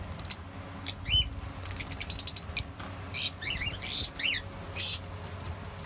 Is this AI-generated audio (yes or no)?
no